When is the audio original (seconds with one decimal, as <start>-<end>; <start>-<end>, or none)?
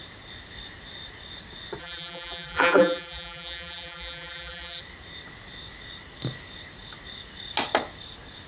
0.0-1.8; 4.8-8.5